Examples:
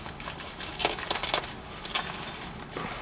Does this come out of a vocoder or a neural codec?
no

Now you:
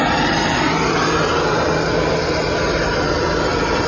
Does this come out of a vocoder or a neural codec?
no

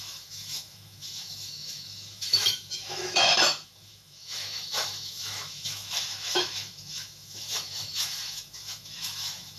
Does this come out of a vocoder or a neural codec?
yes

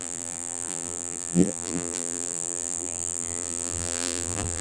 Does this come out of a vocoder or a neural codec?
yes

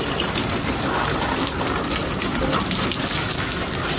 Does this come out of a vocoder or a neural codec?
no